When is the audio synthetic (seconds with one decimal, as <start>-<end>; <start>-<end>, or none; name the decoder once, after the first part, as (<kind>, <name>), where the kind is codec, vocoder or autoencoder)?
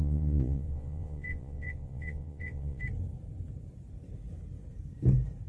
0.0-2.8 (vocoder, Vocos)